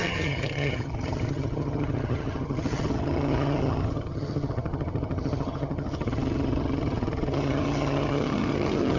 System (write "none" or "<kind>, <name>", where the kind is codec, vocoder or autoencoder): vocoder, HiFi-GAN